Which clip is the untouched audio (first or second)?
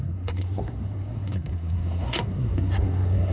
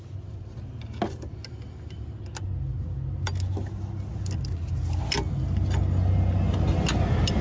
second